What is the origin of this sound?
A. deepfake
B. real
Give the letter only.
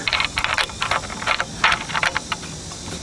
B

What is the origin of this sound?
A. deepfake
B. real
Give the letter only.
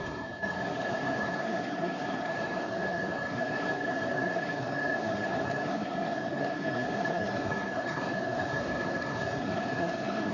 A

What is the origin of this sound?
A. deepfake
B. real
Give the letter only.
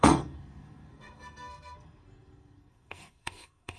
A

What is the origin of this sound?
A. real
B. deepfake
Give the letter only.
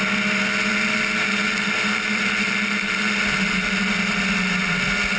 A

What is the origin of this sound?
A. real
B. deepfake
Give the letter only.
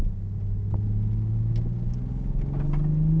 A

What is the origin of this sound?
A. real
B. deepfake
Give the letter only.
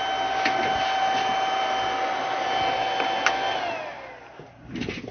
A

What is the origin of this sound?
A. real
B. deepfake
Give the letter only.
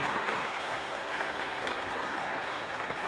B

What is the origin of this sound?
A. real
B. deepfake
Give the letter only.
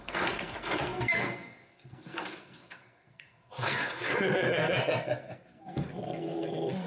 B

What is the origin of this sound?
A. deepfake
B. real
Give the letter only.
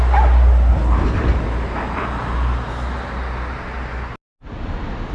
B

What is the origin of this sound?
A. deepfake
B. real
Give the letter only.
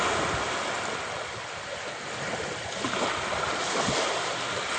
B